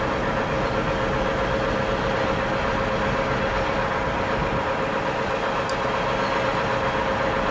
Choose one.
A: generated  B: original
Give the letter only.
B